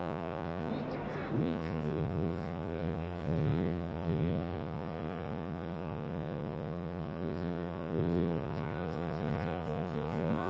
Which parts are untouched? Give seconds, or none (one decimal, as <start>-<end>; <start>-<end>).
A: 0.7-1.4